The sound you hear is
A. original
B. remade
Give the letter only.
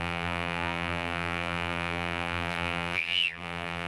B